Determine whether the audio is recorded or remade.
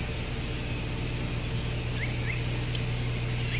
recorded